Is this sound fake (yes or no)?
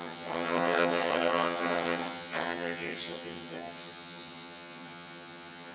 yes